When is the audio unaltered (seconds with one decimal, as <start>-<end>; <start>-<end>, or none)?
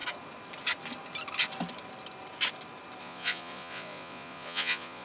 0.0-3.0